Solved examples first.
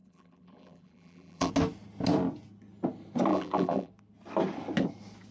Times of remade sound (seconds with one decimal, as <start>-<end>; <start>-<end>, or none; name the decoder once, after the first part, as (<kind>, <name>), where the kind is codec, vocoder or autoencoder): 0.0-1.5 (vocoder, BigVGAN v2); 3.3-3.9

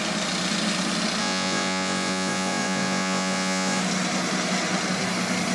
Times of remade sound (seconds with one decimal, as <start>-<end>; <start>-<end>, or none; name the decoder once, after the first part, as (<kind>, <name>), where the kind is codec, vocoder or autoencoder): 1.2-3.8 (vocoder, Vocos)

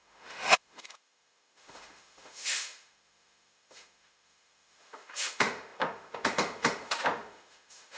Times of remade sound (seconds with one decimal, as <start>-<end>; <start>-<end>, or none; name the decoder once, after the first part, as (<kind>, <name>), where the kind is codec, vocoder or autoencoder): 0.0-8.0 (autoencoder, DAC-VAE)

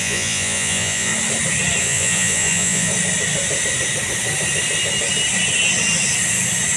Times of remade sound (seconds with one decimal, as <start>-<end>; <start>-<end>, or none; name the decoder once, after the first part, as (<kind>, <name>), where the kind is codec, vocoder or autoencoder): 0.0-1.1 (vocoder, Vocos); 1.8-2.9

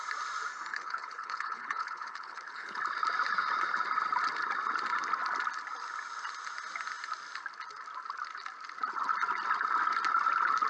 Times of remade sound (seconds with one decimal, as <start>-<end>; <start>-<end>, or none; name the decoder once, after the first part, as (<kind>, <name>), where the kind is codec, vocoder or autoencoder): 0.7-2.8 (codec, HILCodec)

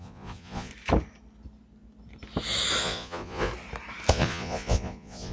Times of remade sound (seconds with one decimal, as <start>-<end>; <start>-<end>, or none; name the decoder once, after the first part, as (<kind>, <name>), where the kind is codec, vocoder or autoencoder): 0.0-0.7 (vocoder, Vocos); 2.8-3.5; 4.1-5.3